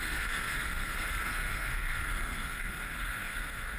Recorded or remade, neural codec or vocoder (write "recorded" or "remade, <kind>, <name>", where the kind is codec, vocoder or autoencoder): remade, codec, SNAC